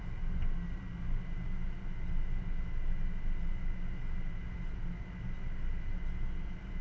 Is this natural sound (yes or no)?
yes